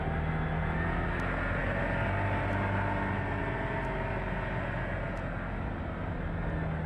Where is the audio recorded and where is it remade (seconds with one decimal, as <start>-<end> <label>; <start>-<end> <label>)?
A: 0.0-6.9 recorded